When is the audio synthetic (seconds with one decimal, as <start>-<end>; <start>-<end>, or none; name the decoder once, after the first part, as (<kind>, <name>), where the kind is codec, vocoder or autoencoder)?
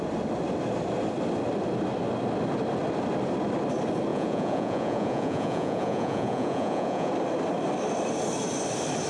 4.1-7.1 (vocoder, Vocos)